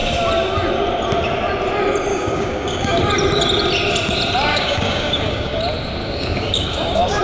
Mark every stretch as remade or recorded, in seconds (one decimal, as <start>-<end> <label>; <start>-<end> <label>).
0.0-2.1 recorded; 2.1-3.0 remade; 3.0-4.5 recorded; 4.5-5.6 remade; 5.6-6.0 recorded; 6.0-7.2 remade